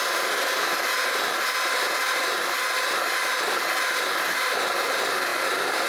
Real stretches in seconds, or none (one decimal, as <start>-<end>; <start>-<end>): 0.0-5.9